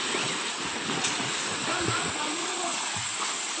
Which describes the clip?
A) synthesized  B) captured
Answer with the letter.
A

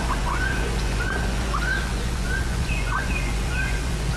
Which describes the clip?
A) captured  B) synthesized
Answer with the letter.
B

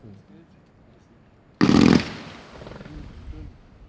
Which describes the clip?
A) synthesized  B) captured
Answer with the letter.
B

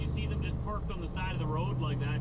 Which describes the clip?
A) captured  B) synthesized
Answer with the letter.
A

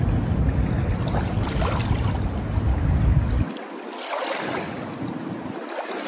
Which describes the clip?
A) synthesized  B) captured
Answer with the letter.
B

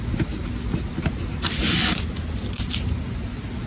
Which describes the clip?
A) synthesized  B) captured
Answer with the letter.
B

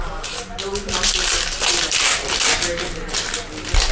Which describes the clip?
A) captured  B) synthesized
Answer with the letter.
A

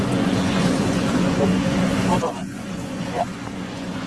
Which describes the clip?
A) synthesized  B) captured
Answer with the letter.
A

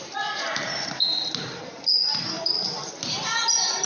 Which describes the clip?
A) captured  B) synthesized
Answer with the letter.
A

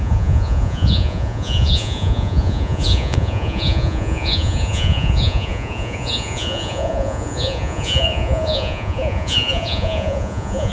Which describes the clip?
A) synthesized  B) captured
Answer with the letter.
A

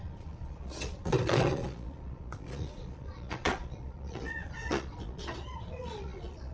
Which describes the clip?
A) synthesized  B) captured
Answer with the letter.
A